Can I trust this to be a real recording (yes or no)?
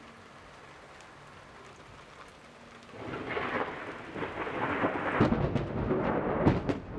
yes